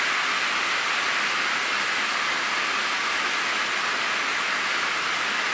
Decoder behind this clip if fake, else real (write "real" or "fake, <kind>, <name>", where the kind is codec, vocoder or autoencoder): real